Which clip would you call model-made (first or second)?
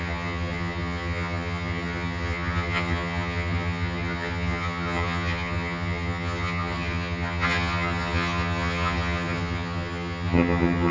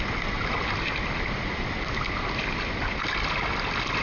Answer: first